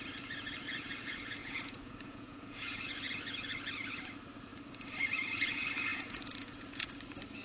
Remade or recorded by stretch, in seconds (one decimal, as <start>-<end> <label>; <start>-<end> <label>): 0.0-1.4 recorded; 1.4-2.8 remade; 2.8-5.9 recorded; 5.9-6.9 remade; 6.9-7.4 recorded